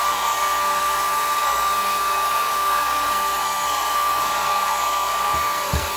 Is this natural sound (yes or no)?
no